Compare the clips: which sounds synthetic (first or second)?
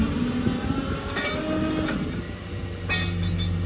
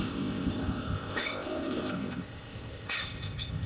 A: second